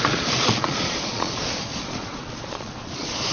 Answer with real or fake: fake